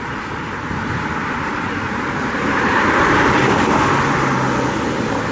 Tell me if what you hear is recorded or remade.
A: recorded